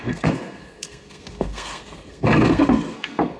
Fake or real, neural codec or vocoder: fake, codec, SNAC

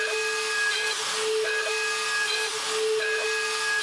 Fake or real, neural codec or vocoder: real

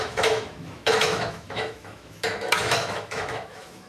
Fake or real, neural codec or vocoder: fake, autoencoder, DAC-VAE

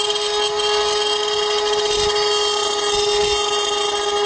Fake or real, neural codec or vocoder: real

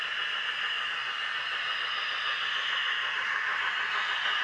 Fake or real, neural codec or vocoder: real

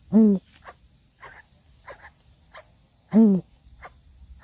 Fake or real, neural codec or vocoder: real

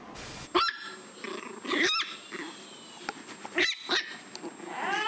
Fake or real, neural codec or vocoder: real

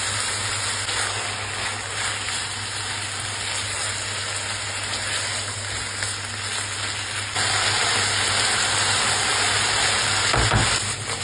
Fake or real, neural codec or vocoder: real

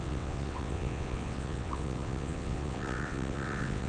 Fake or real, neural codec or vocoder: fake, vocoder, WaveNeXt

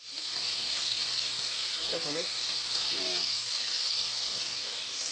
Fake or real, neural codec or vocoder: fake, codec, DAC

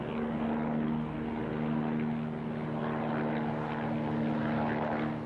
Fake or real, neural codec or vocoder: real